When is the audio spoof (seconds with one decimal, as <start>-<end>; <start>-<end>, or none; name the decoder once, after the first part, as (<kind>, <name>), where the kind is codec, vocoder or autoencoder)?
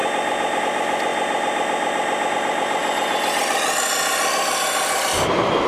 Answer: 0.6-1.1 (vocoder, BigVGAN v2); 2.3-2.8; 4.3-5.7